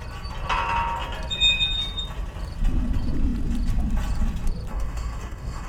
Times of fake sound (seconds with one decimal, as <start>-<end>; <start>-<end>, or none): 4.7-5.7